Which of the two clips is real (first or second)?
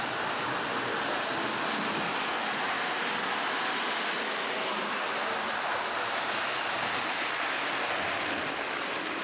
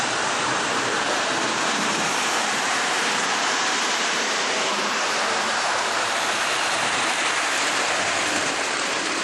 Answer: first